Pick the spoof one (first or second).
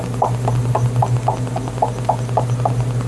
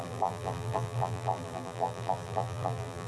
second